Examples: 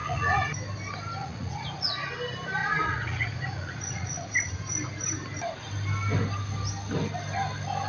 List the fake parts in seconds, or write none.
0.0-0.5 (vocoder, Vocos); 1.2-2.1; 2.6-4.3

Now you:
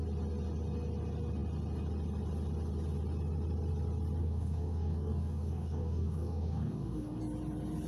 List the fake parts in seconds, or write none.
4.2-7.2 (codec, DAC)

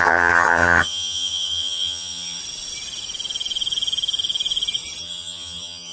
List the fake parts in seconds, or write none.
0.0-2.4 (vocoder, HiFi-GAN); 5.0-5.9

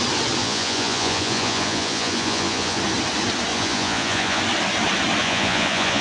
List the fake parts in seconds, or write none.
0.4-2.8 (vocoder, Vocos); 3.5-4.4; 5.2-6.0

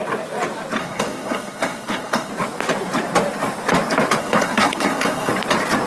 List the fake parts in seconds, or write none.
0.8-2.3 (codec, SNAC); 4.2-5.3

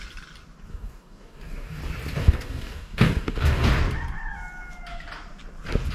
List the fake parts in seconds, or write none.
0.7-1.8 (codec, DAC); 2.2-3.7

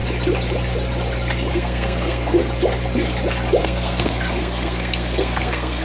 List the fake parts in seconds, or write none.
1.5-2.4 (codec, SNAC); 3.6-5.8

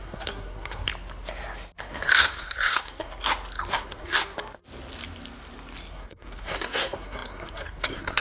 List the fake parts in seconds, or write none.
0.0-0.9 (codec, SNAC); 1.8-3.1; 3.7-4.2; 5.9-8.2